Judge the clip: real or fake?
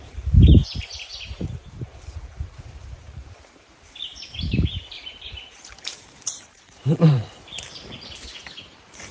fake